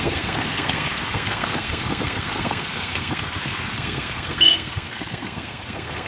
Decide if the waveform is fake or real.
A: fake